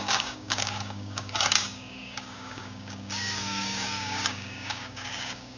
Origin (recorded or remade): remade